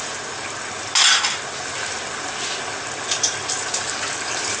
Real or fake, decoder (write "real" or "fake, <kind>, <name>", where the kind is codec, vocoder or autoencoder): real